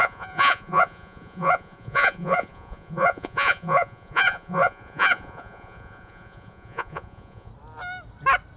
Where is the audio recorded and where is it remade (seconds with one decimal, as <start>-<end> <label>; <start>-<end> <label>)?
0.0-7.5 remade; 7.5-8.6 recorded